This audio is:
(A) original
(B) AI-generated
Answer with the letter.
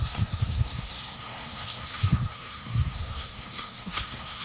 B